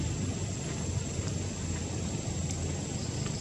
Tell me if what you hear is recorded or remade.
recorded